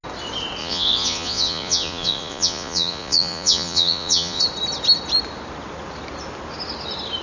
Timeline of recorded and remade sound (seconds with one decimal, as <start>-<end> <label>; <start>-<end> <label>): 0.0-0.6 recorded; 0.6-4.4 remade; 4.4-7.2 recorded